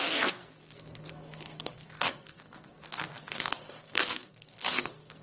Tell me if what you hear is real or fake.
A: fake